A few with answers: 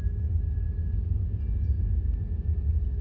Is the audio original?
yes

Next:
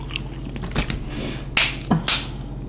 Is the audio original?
yes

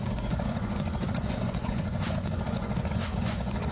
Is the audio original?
no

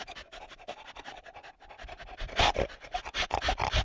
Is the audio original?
yes